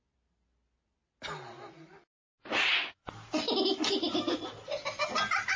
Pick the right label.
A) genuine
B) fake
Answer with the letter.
A